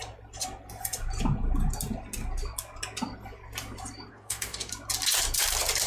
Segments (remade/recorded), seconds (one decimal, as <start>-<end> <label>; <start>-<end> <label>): 0.0-4.1 recorded; 4.1-4.7 remade; 4.7-5.9 recorded